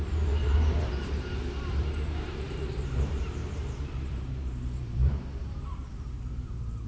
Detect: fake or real fake